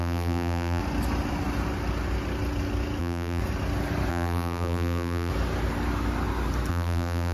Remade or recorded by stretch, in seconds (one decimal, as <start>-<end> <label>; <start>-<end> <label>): 0.0-0.8 remade; 0.8-3.0 recorded; 3.0-3.4 remade; 3.4-4.1 recorded; 4.1-5.3 remade; 5.3-6.7 recorded; 6.7-7.3 remade

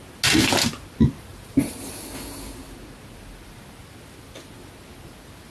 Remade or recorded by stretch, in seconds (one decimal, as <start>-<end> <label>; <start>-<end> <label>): 0.0-1.3 recorded; 1.3-1.9 remade; 1.9-5.5 recorded

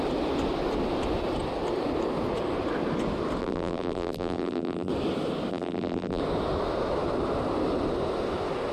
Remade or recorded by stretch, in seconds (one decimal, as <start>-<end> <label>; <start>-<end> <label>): 0.0-3.4 recorded; 3.4-4.9 remade; 4.9-5.5 recorded; 5.5-6.2 remade; 6.2-8.7 recorded

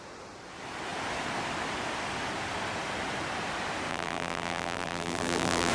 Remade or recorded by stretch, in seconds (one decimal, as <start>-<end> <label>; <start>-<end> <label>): 0.0-3.9 recorded; 3.9-5.7 remade

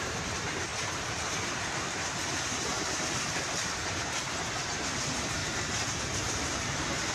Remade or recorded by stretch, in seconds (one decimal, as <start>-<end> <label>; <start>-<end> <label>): 0.0-5.4 remade; 5.4-6.0 recorded; 6.0-7.1 remade

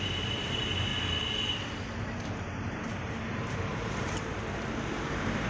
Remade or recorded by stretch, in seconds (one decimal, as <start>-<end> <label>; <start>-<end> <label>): 0.0-0.9 remade; 0.9-2.0 recorded; 2.0-5.5 remade